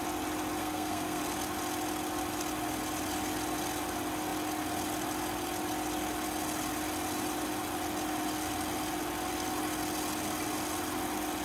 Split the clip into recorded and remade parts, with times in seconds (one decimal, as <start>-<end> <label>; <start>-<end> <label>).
0.0-0.6 recorded; 0.6-1.2 remade; 1.2-11.4 recorded